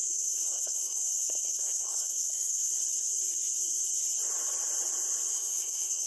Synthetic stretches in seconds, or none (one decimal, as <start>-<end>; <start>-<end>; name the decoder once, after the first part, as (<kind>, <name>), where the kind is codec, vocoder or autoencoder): 0.0-2.7 (codec, SNAC); 5.3-6.1